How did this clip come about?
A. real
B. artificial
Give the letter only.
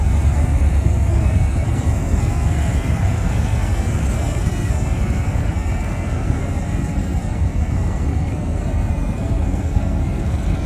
B